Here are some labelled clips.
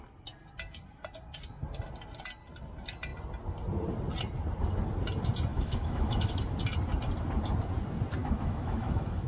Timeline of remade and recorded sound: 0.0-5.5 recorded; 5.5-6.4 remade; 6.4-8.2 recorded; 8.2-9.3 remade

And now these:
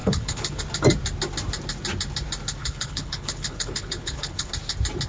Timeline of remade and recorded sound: 0.0-0.6 remade; 0.6-2.6 recorded; 2.6-4.5 remade; 4.5-5.1 recorded

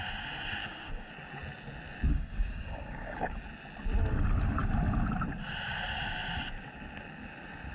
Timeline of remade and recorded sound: 0.0-0.6 recorded; 0.6-1.1 remade; 1.1-2.1 recorded; 2.1-3.4 remade; 3.4-7.7 recorded

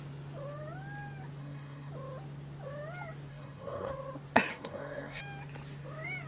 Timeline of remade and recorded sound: 0.0-1.4 recorded; 1.4-1.9 remade; 1.9-3.3 recorded; 3.3-3.9 remade; 3.9-4.5 recorded; 4.5-5.2 remade; 5.2-6.3 recorded

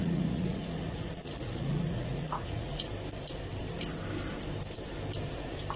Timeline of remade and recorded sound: 0.0-2.9 remade; 2.9-5.8 recorded

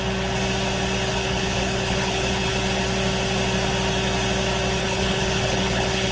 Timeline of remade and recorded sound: 0.0-1.1 recorded; 1.1-2.5 remade; 2.5-4.8 recorded; 4.8-6.1 remade

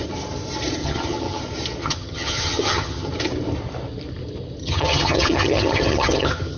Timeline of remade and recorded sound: 0.0-0.8 recorded; 0.8-1.4 remade; 1.4-1.8 recorded; 1.8-3.1 remade; 3.1-4.6 recorded; 4.6-6.6 remade